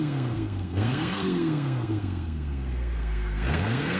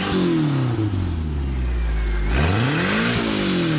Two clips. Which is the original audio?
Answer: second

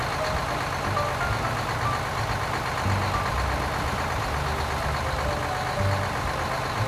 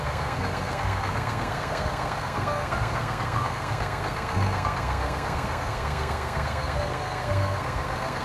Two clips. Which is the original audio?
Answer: first